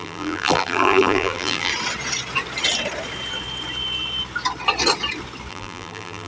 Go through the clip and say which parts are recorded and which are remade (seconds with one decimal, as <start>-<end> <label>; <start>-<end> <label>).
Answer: 0.0-1.7 remade; 1.7-5.5 recorded; 5.5-6.3 remade